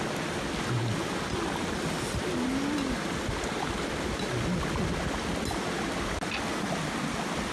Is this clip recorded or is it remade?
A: recorded